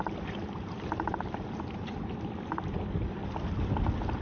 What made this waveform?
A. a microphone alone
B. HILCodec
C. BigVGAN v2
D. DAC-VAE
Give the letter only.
A